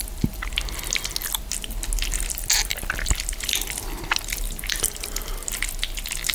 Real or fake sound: real